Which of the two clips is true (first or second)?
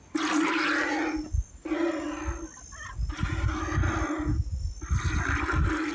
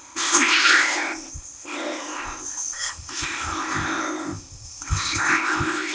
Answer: first